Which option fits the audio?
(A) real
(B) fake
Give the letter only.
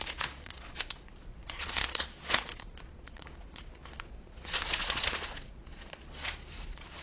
B